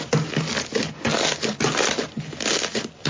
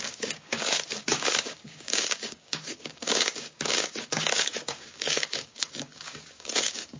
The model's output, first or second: second